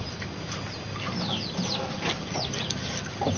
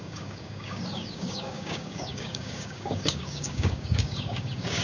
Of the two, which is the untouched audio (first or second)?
first